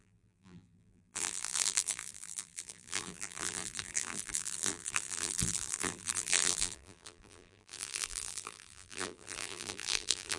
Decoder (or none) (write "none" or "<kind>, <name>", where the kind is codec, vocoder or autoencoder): vocoder, BigVGAN v2